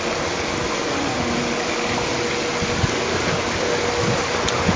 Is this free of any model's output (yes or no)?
no